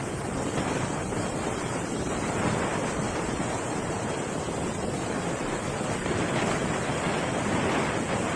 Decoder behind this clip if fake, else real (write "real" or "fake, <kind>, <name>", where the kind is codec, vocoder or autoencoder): real